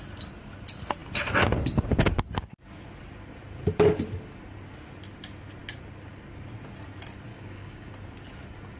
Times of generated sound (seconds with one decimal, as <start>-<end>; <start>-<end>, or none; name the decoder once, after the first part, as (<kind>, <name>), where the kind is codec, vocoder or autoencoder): 7.3-7.9 (codec, DAC)